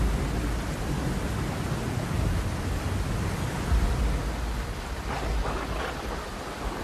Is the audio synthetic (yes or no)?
no